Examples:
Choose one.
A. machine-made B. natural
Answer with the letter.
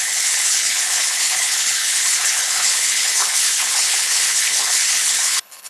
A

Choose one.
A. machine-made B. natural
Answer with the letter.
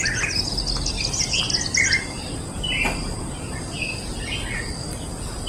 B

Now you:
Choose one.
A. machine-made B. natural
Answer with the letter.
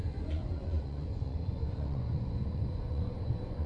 A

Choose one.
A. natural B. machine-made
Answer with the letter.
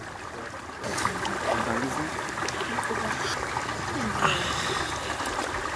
A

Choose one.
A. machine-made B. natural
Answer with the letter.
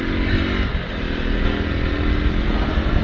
B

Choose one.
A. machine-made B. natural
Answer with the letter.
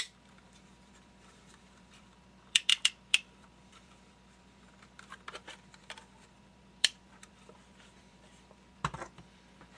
A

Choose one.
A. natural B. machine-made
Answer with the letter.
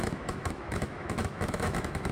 B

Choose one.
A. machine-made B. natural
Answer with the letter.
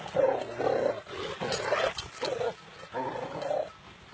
B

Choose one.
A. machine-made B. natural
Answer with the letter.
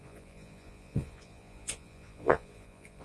A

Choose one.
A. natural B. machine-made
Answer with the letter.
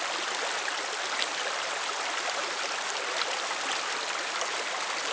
A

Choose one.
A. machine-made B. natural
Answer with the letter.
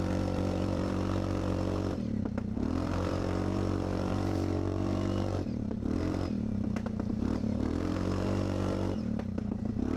A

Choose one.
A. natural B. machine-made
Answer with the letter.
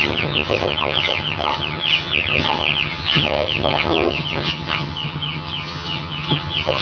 B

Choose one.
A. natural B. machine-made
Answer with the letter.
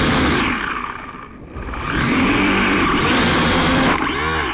B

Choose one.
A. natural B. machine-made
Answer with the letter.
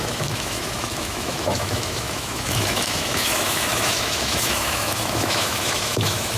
B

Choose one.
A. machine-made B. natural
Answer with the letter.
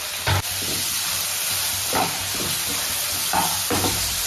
A